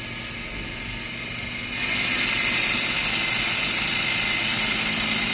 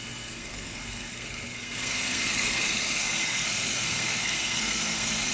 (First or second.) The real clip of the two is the first